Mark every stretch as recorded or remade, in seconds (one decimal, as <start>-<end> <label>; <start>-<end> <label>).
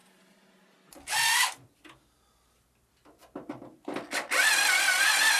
0.0-2.2 remade; 2.2-5.4 recorded